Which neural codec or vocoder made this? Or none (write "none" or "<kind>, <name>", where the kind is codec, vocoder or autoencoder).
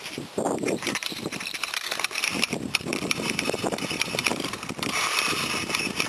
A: vocoder, BigVGAN v2